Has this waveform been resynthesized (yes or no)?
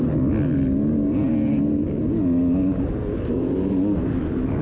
no